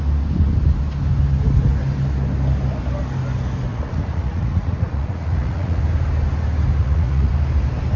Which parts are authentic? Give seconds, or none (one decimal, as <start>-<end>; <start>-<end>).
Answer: 0.0-3.7; 5.8-6.8; 7.3-8.0